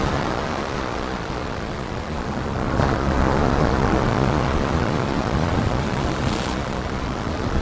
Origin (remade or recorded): remade